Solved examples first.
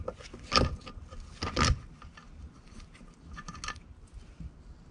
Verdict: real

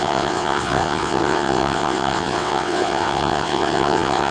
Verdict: fake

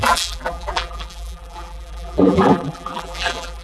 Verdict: fake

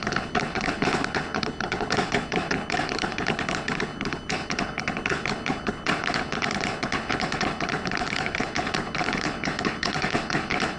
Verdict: fake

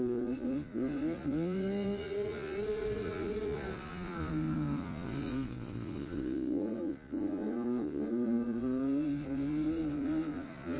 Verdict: fake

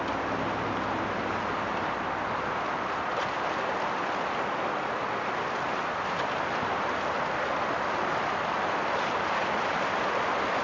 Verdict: real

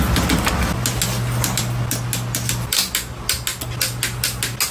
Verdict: real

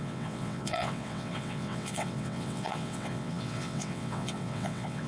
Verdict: fake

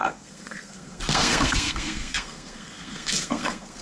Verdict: fake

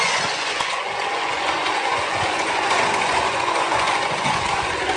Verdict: fake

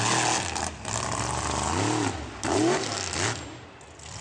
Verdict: real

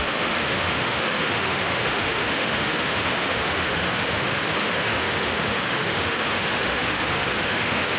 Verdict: fake